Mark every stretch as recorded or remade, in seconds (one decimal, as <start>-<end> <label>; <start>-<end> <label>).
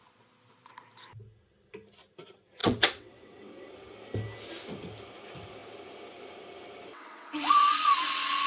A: 0.0-2.6 recorded; 2.6-3.7 remade; 3.7-6.9 recorded; 6.9-8.5 remade